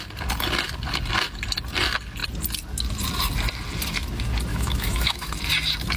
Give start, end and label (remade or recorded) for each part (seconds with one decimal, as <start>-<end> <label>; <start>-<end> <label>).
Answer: 0.0-4.5 recorded; 4.5-5.3 remade; 5.3-6.0 recorded